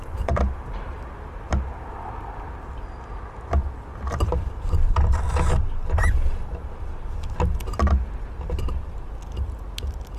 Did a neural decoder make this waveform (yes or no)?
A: no